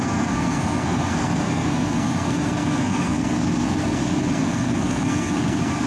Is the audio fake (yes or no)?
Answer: yes